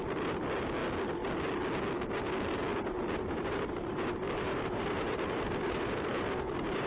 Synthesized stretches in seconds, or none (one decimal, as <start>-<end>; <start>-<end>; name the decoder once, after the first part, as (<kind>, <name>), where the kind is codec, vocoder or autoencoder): 2.7-6.9 (vocoder, BigVGAN v2)